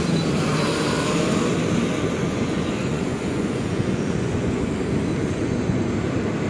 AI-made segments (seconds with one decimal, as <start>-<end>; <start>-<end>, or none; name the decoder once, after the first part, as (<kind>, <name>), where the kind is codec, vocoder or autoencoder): 2.2-4.7 (vocoder, Vocos); 5.2-5.9